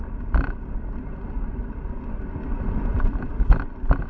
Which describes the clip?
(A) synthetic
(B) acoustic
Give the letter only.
B